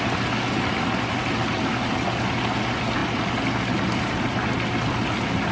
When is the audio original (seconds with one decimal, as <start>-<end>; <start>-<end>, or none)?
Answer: 0.0-5.5